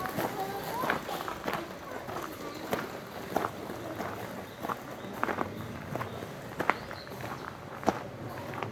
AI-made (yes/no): no